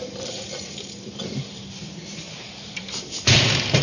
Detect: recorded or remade remade